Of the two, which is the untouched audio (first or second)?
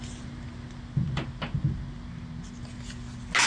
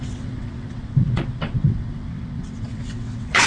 first